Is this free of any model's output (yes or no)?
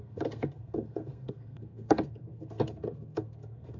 no